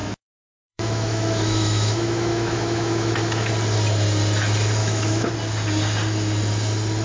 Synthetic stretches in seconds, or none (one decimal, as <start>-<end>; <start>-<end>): 0.0-3.5; 4.8-5.3